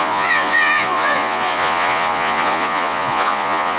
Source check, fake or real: fake